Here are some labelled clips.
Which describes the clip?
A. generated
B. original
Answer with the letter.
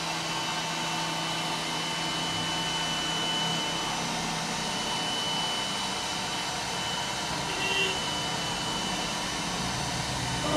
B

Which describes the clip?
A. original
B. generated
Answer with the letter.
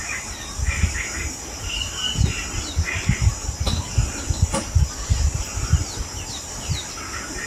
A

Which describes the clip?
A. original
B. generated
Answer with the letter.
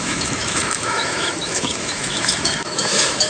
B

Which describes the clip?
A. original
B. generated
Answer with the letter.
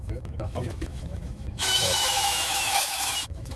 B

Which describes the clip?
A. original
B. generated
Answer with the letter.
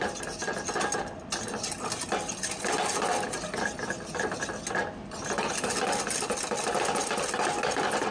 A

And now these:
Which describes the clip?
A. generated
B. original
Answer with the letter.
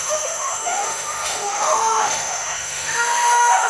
A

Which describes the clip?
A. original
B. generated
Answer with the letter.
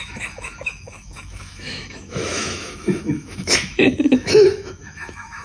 B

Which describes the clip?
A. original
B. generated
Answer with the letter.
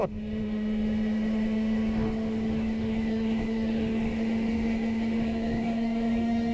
B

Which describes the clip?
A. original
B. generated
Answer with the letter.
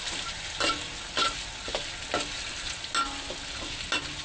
A